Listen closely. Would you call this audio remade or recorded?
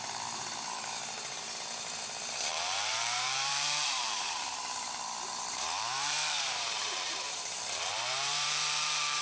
remade